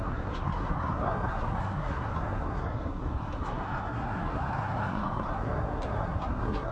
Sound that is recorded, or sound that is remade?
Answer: remade